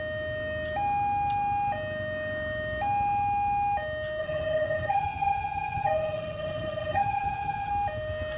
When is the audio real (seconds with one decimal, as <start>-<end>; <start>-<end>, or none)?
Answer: 0.0-4.2; 7.7-8.4